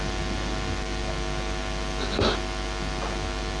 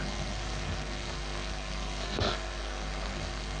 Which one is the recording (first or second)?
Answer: first